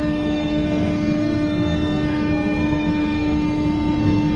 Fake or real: fake